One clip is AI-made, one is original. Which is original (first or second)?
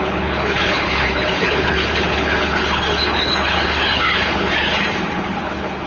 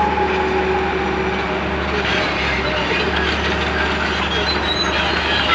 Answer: second